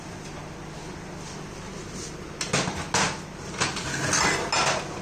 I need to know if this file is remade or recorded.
recorded